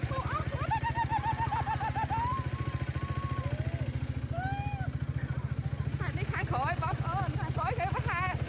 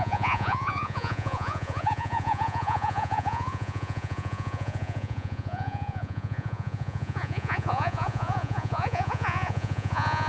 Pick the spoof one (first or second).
second